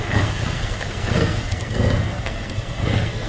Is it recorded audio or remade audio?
remade